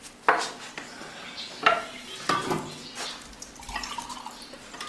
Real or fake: real